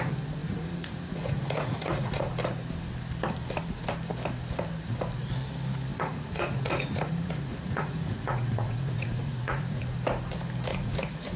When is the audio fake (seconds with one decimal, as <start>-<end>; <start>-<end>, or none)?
0.4-2.3; 5.9-9.8; 10.7-11.4